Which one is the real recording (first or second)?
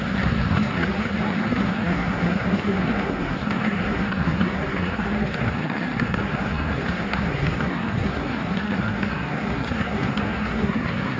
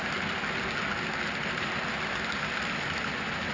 second